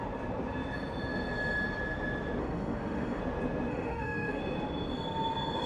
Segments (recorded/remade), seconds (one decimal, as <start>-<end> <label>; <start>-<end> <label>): 0.0-2.4 recorded; 2.4-3.2 remade; 3.2-3.7 recorded; 3.7-4.4 remade; 4.4-5.7 recorded